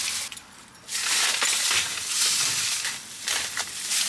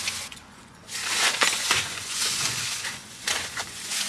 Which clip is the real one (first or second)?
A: first